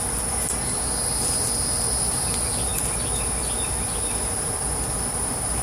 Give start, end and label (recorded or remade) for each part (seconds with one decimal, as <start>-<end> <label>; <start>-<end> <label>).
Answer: 0.0-5.6 recorded